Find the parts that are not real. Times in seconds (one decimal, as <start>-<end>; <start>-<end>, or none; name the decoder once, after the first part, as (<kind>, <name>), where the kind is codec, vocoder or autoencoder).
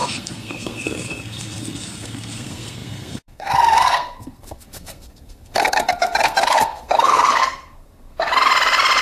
0.0-8.3 (codec, SNAC)